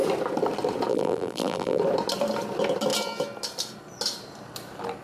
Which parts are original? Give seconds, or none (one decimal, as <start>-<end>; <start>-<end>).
0.0-0.9; 1.8-5.0